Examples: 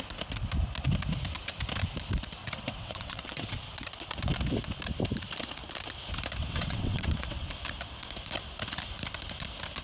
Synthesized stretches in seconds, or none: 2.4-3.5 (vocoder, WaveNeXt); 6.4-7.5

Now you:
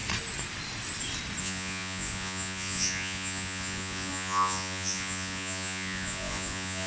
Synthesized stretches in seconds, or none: 1.4-6.9 (vocoder, Vocos)

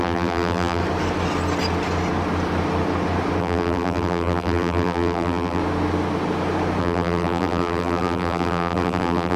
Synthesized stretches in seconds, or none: 0.0-0.8 (vocoder, BigVGAN v2); 3.4-5.6; 6.8-9.4

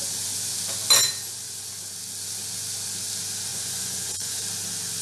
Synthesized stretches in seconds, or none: 3.5-4.4 (vocoder, Vocos)

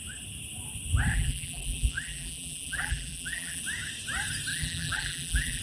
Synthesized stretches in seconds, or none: 1.1-3.6 (vocoder, BigVGAN v2); 4.5-5.6

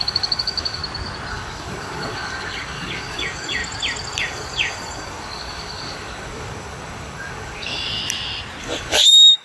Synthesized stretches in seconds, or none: 0.0-0.8 (codec, DAC); 1.3-3.6; 4.2-8.0; 8.6-9.4

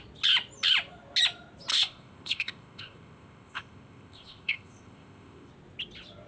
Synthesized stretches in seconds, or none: 1.7-5.5 (codec, ZipCodec)

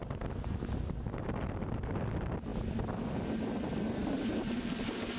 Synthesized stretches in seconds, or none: none